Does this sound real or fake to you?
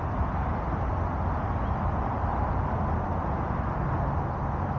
real